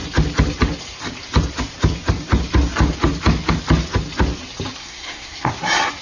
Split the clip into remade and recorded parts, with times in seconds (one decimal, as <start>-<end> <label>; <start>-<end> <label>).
0.0-4.8 recorded; 4.8-5.5 remade; 5.5-6.0 recorded